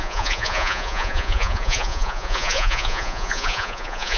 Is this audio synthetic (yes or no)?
yes